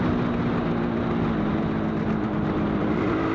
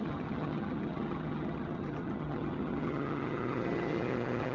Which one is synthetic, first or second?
second